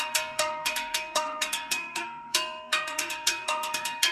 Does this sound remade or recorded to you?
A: remade